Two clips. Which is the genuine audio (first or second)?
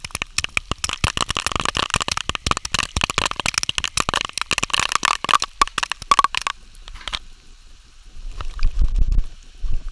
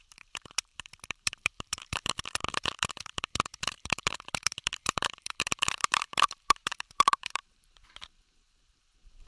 first